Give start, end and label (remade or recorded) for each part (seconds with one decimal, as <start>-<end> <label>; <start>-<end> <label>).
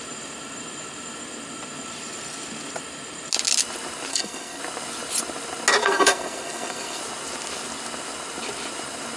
0.0-4.1 recorded; 4.1-4.6 remade; 4.6-5.8 recorded; 5.8-7.0 remade; 7.0-9.2 recorded